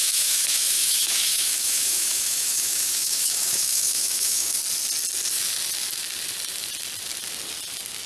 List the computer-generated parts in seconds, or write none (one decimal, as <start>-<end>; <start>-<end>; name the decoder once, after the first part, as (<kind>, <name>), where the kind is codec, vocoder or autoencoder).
0.0-4.6 (autoencoder, DAC-VAE)